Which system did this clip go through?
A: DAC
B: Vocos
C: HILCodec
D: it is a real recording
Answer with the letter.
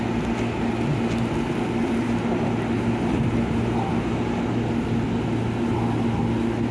D